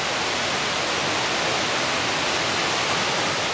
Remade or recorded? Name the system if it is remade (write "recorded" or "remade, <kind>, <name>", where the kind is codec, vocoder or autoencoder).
recorded